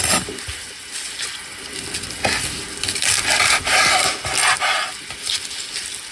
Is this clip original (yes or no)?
yes